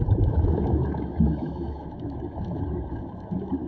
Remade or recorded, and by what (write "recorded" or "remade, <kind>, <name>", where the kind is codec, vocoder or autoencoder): remade, autoencoder, DAC-VAE